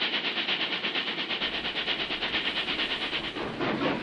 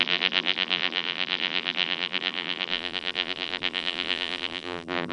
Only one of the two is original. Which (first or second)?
first